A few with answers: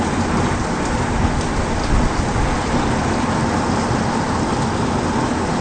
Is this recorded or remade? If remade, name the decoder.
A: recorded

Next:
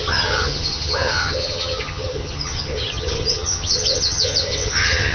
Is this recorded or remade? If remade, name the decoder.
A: remade, vocoder, HiFi-GAN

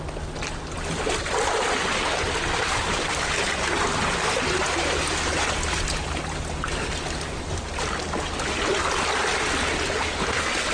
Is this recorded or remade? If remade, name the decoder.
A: recorded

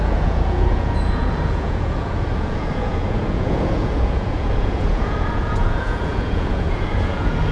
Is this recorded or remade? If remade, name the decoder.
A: remade, vocoder, Vocos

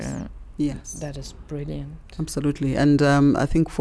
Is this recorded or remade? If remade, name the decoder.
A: recorded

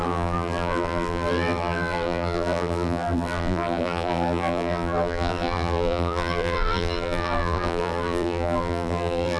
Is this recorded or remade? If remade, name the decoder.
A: remade, vocoder, BigVGAN v2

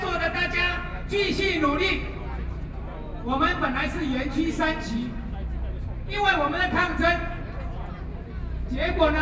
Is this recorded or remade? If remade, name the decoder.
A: recorded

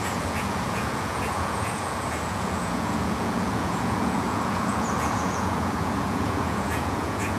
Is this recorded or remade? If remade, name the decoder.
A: remade, vocoder, Vocos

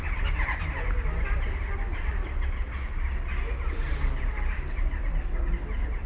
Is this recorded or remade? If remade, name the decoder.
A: recorded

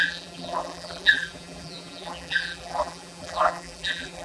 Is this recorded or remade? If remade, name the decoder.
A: remade, vocoder, BigVGAN v2